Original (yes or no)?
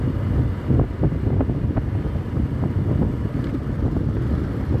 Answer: yes